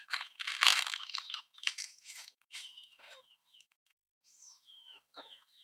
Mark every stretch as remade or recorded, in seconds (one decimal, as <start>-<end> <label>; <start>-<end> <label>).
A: 0.0-5.6 remade